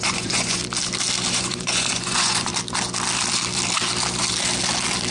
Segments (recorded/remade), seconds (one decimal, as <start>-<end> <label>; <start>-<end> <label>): 0.0-0.6 remade; 0.6-1.3 recorded; 1.3-2.5 remade; 2.5-5.1 recorded